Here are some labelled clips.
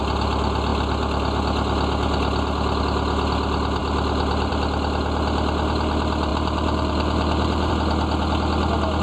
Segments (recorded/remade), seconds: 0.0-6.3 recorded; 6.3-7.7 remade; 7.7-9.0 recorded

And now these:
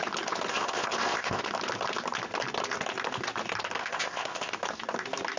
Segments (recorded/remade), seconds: 0.0-0.5 recorded; 0.5-1.4 remade; 1.4-3.8 recorded; 3.8-4.5 remade; 4.5-5.4 recorded

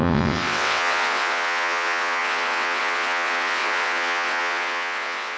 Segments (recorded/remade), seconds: 0.0-5.4 remade

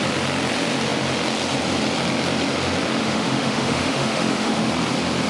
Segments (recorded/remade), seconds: 0.0-3.0 recorded; 3.0-4.7 remade; 4.7-5.3 recorded

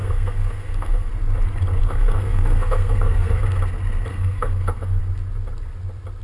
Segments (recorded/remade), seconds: 0.0-1.1 remade; 1.1-1.8 recorded; 1.8-3.4 remade; 3.4-4.1 recorded; 4.1-5.0 remade; 5.0-6.2 recorded

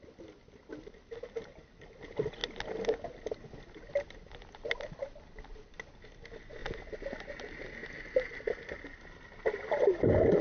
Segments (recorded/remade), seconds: 0.0-10.4 recorded